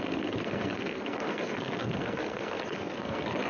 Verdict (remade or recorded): remade